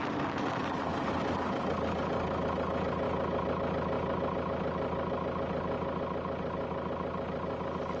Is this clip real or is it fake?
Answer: real